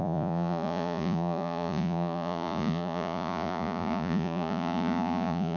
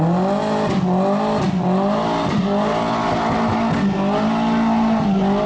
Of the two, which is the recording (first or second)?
second